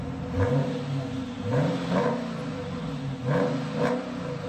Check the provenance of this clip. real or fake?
real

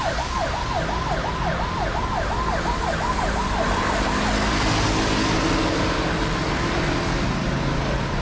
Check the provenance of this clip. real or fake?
real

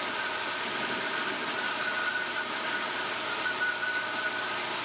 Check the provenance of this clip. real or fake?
real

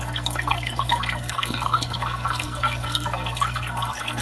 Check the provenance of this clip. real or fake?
fake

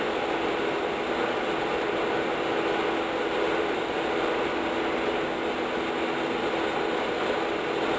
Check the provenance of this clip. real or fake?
real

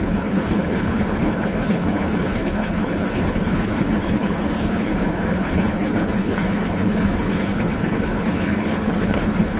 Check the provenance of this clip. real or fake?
fake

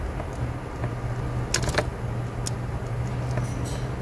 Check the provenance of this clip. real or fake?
real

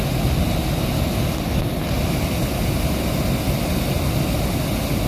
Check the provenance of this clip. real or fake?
real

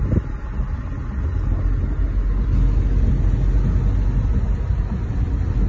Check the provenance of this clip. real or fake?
real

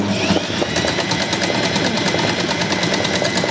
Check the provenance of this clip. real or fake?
real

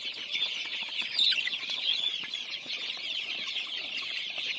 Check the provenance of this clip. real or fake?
fake